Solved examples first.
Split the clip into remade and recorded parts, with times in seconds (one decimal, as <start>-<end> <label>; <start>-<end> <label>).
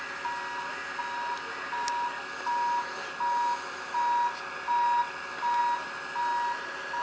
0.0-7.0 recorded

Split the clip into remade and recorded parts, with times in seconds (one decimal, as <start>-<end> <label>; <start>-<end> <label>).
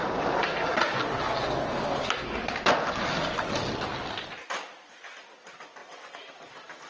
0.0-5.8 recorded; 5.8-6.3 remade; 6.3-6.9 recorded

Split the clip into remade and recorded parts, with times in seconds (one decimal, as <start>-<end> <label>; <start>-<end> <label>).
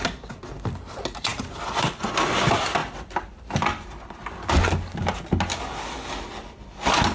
0.0-7.1 recorded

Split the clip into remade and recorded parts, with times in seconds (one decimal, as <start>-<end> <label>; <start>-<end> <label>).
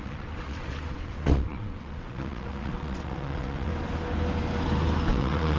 0.0-3.7 remade; 3.7-5.1 recorded; 5.1-5.6 remade